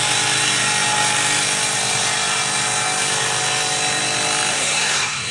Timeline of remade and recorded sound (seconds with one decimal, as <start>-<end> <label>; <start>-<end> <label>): 0.0-4.5 recorded; 4.5-5.3 remade